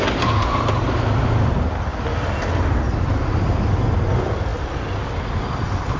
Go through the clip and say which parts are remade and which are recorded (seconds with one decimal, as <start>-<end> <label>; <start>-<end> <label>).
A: 0.0-6.0 recorded

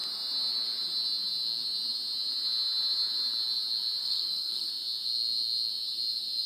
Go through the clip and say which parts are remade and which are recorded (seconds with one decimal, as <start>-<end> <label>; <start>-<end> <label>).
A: 0.0-4.0 recorded; 4.0-4.7 remade; 4.7-6.5 recorded

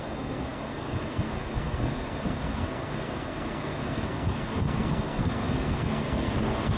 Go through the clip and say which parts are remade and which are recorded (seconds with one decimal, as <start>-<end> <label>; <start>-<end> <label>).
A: 0.0-6.8 remade

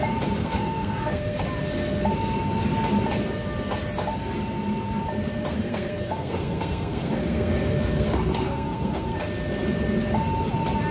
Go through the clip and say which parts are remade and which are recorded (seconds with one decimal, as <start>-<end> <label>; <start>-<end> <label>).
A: 0.0-0.4 recorded; 0.4-1.4 remade; 1.4-5.5 recorded; 5.5-9.2 remade; 9.2-10.9 recorded

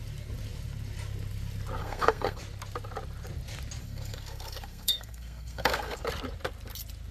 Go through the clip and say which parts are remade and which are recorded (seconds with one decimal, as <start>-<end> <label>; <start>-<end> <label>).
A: 0.0-1.8 recorded; 1.8-2.4 remade; 2.4-3.8 recorded; 3.8-6.1 remade; 6.1-7.1 recorded